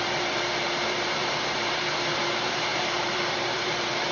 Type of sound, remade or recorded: remade